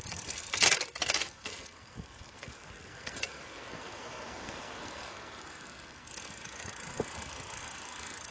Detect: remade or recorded remade